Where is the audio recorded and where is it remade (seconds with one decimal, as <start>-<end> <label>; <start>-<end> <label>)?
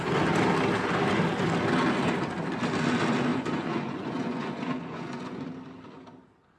0.0-3.3 recorded; 3.3-5.5 remade; 5.5-6.6 recorded